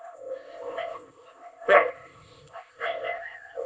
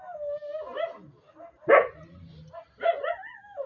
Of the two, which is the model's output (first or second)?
first